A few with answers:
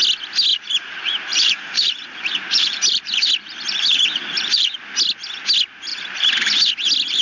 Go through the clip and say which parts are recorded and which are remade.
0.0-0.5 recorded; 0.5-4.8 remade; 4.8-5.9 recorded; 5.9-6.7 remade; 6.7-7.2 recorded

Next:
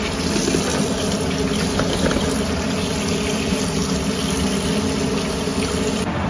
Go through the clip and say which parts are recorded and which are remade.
0.0-6.3 recorded